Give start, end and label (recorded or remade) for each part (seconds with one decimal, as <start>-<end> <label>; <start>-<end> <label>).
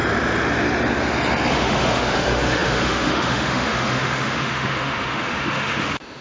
0.0-1.5 recorded; 1.5-6.2 remade